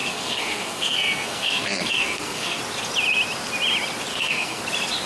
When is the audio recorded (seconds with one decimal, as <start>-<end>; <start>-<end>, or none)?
2.6-4.1; 4.6-5.1

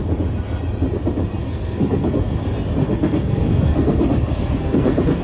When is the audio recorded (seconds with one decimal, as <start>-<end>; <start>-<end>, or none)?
0.0-1.4; 2.4-2.8

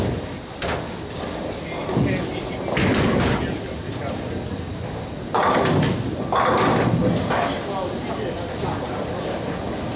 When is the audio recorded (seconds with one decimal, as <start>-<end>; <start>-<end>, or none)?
0.0-10.0

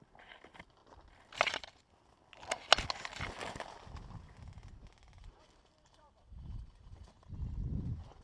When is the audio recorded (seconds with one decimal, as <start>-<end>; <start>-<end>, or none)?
0.0-5.2; 7.3-8.2

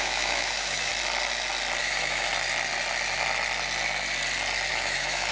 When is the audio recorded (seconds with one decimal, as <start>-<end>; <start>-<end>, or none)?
0.9-1.8; 2.3-4.7

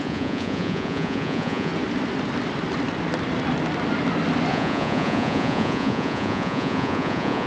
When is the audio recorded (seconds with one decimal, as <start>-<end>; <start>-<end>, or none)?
1.7-4.5

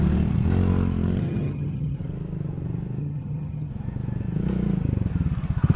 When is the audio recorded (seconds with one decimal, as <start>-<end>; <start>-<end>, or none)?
0.0-1.2; 2.0-3.0; 3.7-5.8

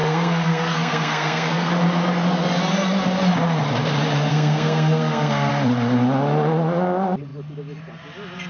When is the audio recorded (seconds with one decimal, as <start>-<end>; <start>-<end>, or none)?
1.7-4.3; 5.5-8.5